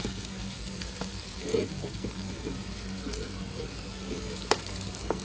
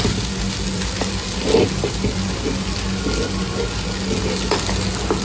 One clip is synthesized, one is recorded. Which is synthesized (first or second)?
first